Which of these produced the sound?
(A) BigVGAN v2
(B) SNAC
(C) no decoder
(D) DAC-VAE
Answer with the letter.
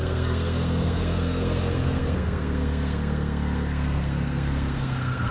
B